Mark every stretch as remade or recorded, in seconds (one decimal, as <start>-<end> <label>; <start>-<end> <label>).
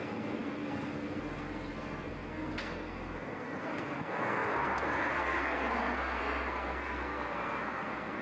0.0-8.2 remade